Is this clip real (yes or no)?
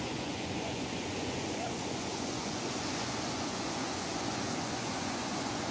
no